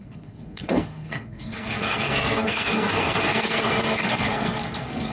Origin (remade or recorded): remade